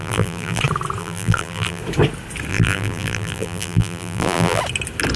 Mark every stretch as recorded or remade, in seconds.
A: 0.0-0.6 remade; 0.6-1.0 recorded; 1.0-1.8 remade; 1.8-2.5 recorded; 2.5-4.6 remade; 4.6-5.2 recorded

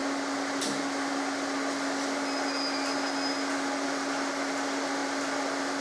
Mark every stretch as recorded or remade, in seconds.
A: 0.0-5.8 recorded

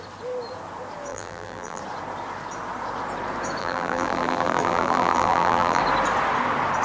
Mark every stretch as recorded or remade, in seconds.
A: 0.0-1.1 recorded; 1.1-1.8 remade; 1.8-3.6 recorded; 3.6-5.8 remade; 5.8-6.8 recorded

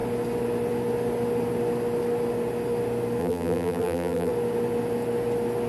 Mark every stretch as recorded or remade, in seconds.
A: 0.0-3.2 recorded; 3.2-4.3 remade; 4.3-5.7 recorded

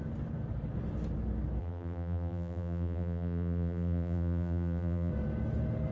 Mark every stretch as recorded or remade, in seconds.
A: 0.0-1.6 recorded; 1.6-5.1 remade; 5.1-5.9 recorded

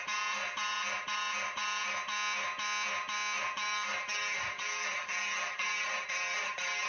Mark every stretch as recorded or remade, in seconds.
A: 0.0-1.8 remade; 1.8-3.4 recorded; 3.4-6.9 remade

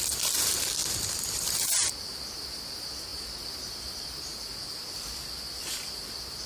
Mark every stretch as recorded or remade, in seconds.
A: 0.0-6.5 recorded

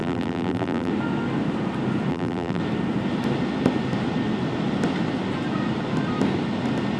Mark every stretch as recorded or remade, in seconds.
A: 0.0-0.9 remade; 0.9-2.1 recorded; 2.1-2.6 remade; 2.6-7.0 recorded